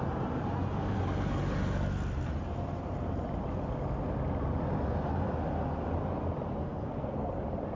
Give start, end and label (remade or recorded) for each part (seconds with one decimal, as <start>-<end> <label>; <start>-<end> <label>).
0.0-6.6 recorded; 6.6-7.3 remade; 7.3-7.7 recorded